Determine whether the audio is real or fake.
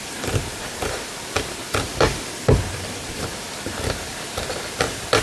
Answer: fake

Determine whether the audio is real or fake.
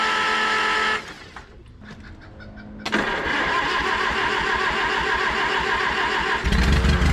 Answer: real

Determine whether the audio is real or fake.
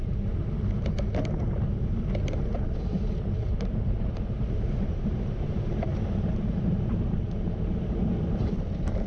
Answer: fake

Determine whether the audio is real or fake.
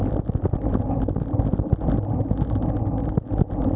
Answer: real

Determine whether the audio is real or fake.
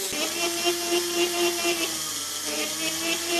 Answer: real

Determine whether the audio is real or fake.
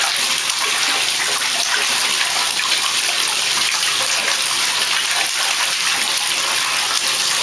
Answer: real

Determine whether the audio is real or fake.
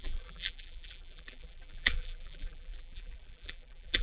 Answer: fake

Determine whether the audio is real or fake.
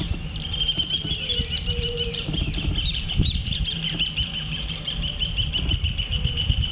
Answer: fake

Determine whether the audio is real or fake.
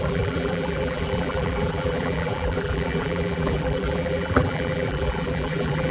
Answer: fake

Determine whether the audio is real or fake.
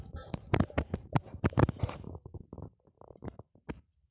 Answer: fake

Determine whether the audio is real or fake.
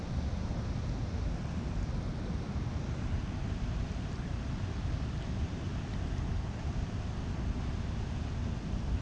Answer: real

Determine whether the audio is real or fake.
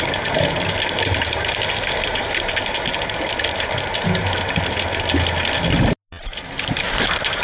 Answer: real